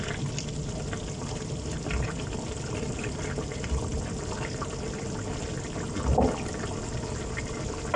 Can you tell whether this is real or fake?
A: real